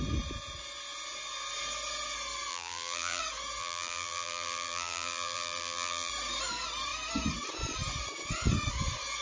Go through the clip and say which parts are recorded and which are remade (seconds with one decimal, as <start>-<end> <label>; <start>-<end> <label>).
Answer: 0.0-2.5 recorded; 2.5-3.2 remade; 3.2-3.6 recorded; 3.6-6.1 remade; 6.1-9.2 recorded